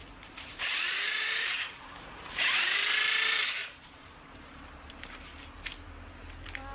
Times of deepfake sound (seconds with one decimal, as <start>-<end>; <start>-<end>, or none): 0.0-2.2; 3.6-5.6